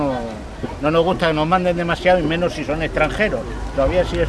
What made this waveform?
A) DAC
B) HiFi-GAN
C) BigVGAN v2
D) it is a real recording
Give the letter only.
D